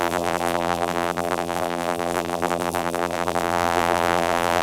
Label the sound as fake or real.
fake